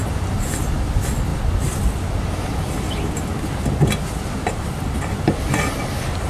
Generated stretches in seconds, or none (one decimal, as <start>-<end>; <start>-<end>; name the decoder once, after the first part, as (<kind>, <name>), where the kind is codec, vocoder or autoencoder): none